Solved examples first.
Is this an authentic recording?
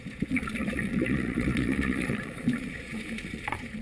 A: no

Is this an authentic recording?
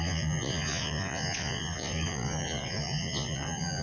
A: no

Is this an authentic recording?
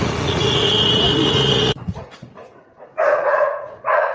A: no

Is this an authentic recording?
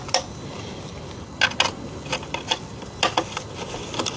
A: yes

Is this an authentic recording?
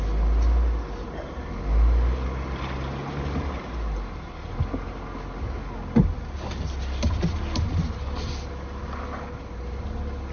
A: yes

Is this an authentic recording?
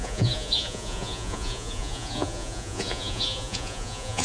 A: no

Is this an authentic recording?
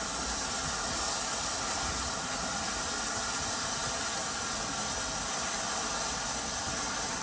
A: yes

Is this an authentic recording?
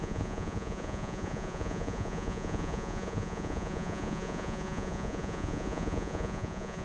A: no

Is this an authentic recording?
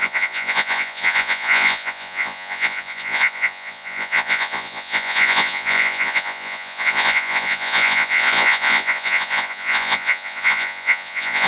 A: no